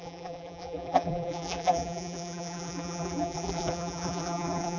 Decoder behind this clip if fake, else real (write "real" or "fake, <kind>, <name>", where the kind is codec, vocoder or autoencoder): fake, vocoder, BigVGAN v2